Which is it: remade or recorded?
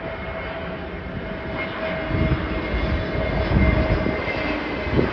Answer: recorded